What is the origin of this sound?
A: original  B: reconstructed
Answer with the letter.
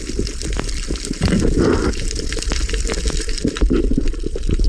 B